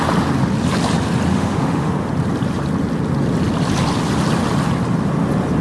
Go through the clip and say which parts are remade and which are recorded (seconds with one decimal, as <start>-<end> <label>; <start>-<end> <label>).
0.0-1.3 recorded; 1.3-1.9 remade; 1.9-5.6 recorded